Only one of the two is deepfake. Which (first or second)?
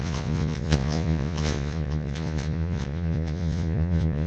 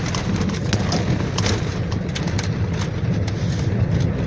first